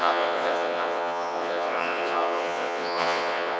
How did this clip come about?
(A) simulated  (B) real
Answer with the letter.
A